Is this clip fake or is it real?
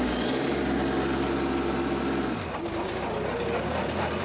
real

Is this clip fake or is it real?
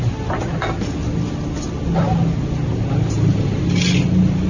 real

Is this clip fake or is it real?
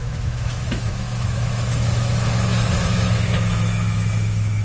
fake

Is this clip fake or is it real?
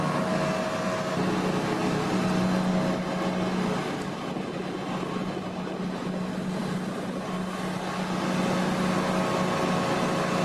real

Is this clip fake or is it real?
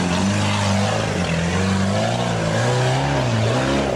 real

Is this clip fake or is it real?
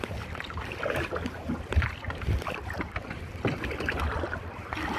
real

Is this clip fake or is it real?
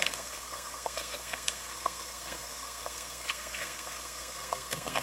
fake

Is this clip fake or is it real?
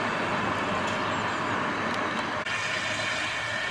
real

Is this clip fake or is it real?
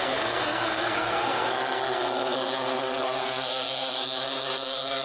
fake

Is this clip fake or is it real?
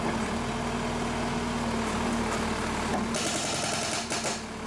real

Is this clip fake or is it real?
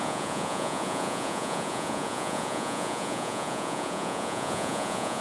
fake